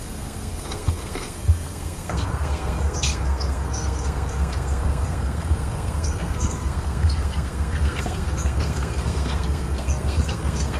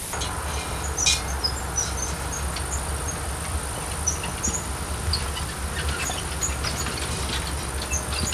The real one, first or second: second